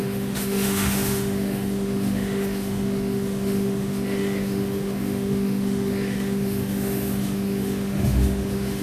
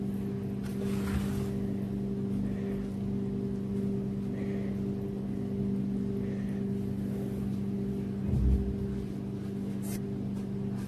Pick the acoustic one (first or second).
second